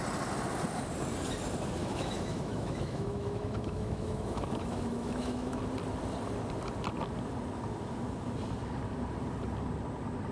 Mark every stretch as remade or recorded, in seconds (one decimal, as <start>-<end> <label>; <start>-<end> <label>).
0.0-1.8 recorded; 1.8-5.6 remade; 5.6-10.3 recorded